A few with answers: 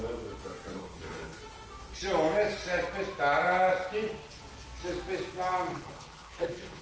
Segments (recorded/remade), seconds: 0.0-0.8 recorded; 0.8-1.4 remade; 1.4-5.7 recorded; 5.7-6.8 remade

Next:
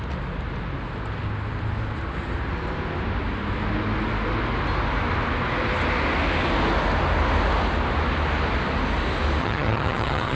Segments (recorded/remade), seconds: 0.0-9.4 recorded; 9.4-10.4 remade

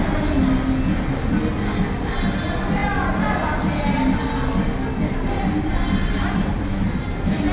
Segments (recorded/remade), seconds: 0.0-7.5 recorded

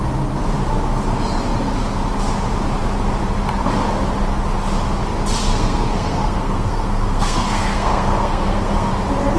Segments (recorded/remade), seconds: 0.0-5.4 recorded; 5.4-8.9 remade; 8.9-9.4 recorded

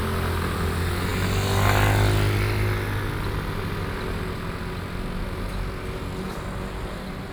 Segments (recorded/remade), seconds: 0.0-7.3 recorded

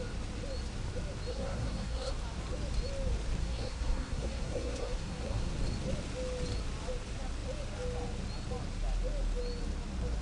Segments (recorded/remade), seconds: 0.0-1.3 recorded; 1.3-2.1 remade; 2.1-3.4 recorded; 3.4-5.5 remade; 5.5-10.2 recorded